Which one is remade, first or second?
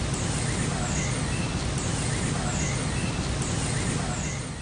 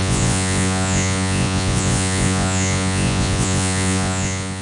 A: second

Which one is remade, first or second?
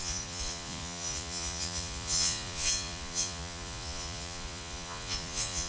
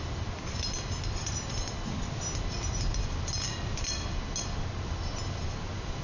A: first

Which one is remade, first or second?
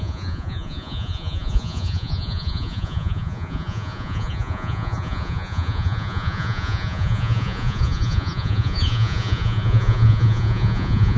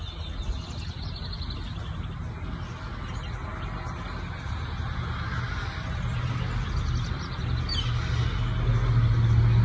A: first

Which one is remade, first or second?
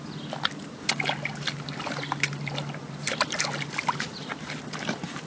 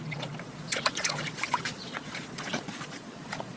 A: second